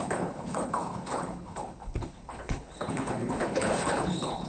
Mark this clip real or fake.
fake